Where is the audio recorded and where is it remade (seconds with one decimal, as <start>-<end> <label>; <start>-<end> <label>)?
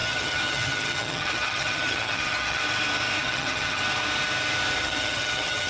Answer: 0.0-2.6 remade; 2.6-3.2 recorded; 3.2-3.8 remade; 3.8-4.8 recorded; 4.8-5.7 remade